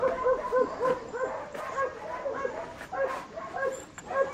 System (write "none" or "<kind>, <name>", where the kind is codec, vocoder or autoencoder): none